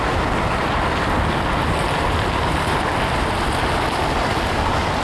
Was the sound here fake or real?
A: real